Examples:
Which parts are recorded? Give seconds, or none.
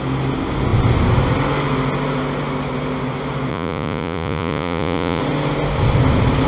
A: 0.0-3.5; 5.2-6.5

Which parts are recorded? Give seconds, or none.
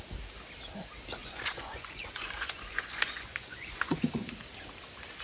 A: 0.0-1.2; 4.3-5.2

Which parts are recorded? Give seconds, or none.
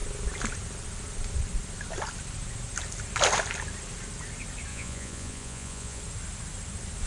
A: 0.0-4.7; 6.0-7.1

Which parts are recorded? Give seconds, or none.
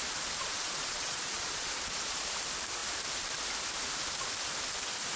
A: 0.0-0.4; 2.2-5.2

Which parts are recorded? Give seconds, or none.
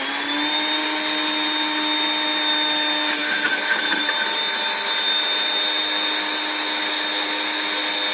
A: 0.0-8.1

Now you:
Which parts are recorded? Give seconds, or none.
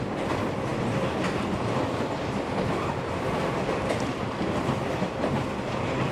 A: 0.0-6.1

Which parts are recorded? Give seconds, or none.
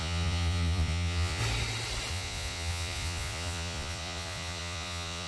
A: 1.4-2.1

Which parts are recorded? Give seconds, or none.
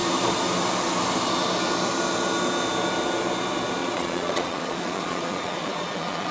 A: 0.0-3.8